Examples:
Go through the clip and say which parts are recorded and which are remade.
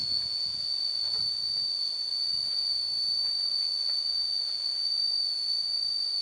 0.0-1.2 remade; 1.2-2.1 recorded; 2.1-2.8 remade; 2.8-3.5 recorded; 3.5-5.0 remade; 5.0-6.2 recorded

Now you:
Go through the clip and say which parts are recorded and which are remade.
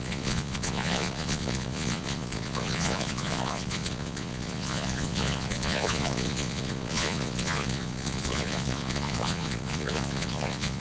0.0-10.8 remade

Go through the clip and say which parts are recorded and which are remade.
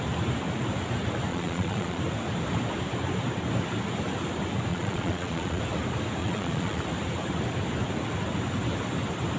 0.0-1.3 recorded; 1.3-2.0 remade; 2.0-4.7 recorded; 4.7-5.6 remade; 5.6-6.2 recorded; 6.2-6.8 remade; 6.8-9.4 recorded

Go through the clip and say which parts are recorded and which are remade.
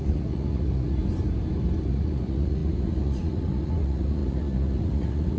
0.0-1.0 remade; 1.0-1.8 recorded; 1.8-5.4 remade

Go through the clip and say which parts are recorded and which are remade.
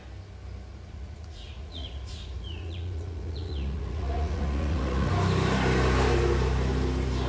0.0-0.7 recorded; 0.7-5.1 remade; 5.1-7.3 recorded